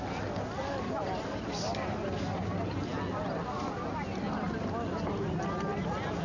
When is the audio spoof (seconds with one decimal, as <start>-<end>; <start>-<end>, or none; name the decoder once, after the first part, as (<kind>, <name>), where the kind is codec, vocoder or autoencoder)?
none